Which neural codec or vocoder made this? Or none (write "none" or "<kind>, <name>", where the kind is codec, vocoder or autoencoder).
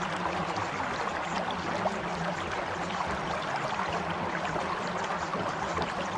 none